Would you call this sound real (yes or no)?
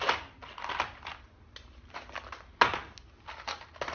yes